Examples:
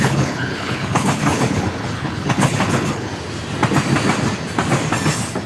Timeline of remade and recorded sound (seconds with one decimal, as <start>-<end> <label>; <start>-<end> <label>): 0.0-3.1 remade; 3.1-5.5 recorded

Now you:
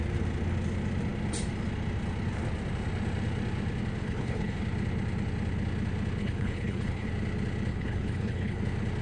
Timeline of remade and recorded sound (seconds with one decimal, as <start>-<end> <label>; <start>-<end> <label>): 0.0-4.0 recorded; 4.0-4.6 remade; 4.6-6.2 recorded; 6.2-7.1 remade; 7.1-7.7 recorded; 7.7-8.6 remade; 8.6-9.0 recorded

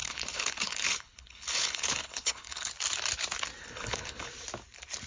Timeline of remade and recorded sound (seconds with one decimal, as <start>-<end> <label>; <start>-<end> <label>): 0.0-2.7 remade; 2.7-3.6 recorded; 3.6-4.3 remade; 4.3-5.1 recorded

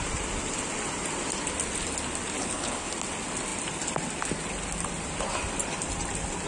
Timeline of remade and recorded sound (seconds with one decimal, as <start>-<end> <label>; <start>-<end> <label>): 0.0-2.4 recorded; 2.4-2.9 remade; 2.9-6.5 recorded